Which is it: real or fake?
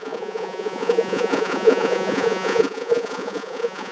fake